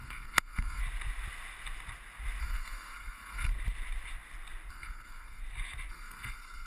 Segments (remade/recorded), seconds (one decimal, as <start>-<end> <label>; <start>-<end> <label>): 0.0-0.8 remade; 0.8-2.4 recorded; 2.4-3.5 remade; 3.5-4.7 recorded; 4.7-5.4 remade; 5.4-5.9 recorded; 5.9-6.7 remade